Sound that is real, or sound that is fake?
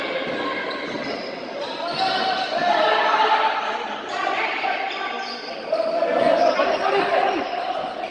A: real